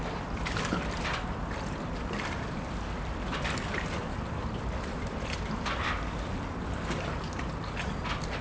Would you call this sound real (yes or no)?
yes